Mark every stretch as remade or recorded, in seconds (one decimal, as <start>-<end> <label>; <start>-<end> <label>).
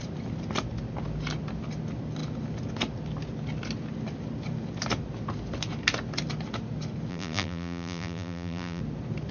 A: 0.0-7.1 recorded; 7.1-8.8 remade; 8.8-9.3 recorded